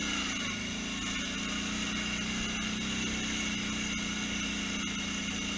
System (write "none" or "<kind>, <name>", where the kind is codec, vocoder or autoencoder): none